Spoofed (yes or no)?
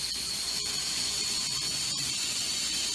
yes